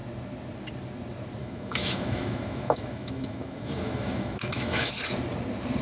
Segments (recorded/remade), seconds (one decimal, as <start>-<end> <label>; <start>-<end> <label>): 0.0-1.4 recorded; 1.4-4.9 remade; 4.9-5.8 recorded